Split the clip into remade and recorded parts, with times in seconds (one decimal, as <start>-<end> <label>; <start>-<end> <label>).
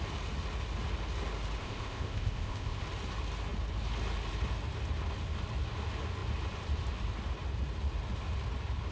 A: 0.0-1.6 recorded; 1.6-2.8 remade; 2.8-8.9 recorded